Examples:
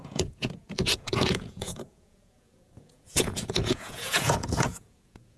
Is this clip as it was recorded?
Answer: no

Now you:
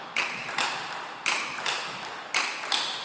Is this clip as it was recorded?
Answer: yes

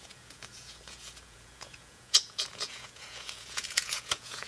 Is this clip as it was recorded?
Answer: no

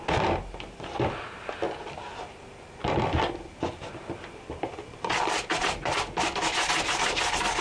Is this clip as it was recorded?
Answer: yes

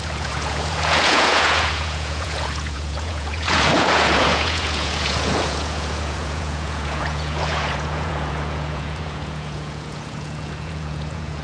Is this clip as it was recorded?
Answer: no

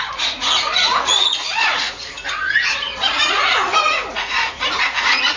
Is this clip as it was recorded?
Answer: no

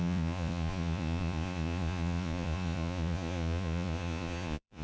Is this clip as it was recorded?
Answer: no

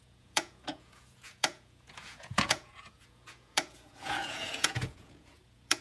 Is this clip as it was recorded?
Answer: no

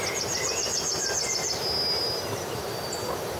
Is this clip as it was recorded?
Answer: yes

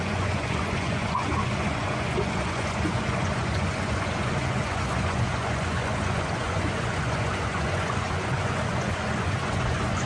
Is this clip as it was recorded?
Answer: no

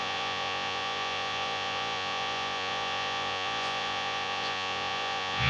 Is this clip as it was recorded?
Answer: no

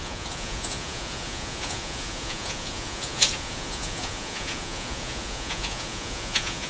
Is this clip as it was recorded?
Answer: no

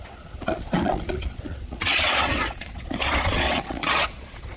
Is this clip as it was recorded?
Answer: no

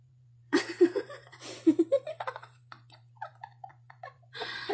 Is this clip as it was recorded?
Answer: no